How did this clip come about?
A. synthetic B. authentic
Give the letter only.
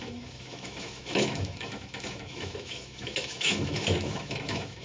A